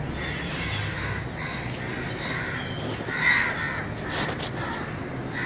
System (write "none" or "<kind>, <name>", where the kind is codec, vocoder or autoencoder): none